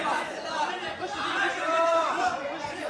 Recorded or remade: remade